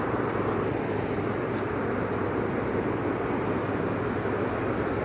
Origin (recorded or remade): recorded